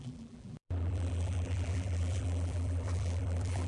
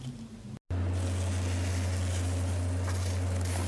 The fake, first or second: first